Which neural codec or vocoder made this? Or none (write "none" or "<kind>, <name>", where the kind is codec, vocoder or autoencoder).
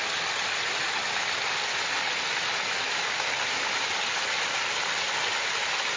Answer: none